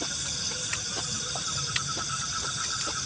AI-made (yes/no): no